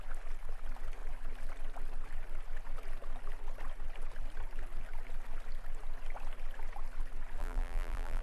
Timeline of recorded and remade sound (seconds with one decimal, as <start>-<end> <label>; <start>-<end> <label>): 0.0-7.4 recorded; 7.4-8.2 remade